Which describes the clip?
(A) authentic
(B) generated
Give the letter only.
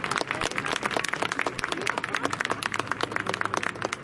A